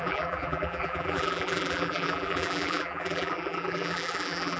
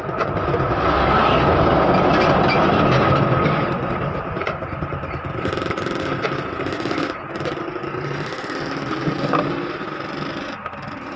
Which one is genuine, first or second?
second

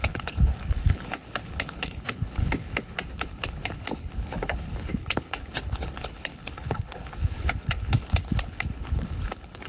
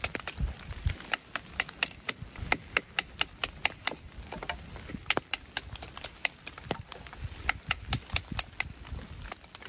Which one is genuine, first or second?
second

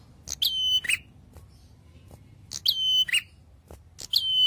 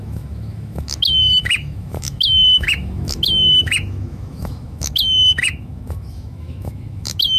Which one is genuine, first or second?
first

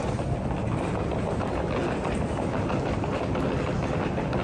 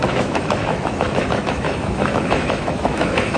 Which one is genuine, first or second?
first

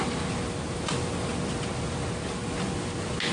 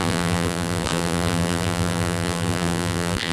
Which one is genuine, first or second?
first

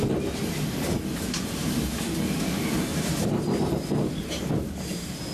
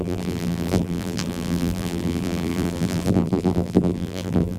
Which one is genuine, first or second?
first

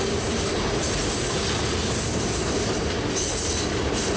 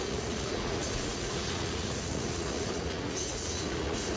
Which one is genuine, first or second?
first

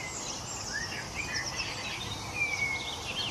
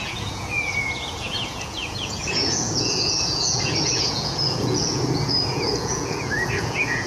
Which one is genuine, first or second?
first